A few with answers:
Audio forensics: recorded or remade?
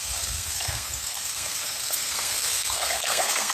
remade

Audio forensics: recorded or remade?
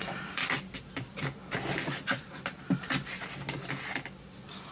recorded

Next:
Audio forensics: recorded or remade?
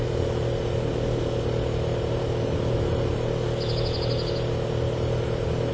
recorded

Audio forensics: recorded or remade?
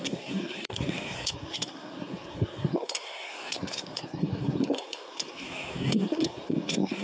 remade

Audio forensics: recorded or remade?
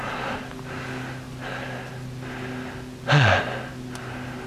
recorded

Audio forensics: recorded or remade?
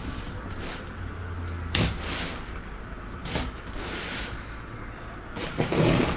recorded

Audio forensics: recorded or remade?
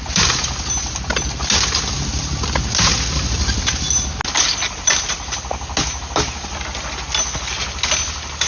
recorded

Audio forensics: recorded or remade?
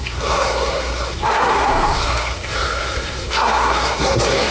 remade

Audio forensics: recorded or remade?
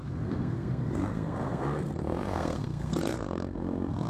remade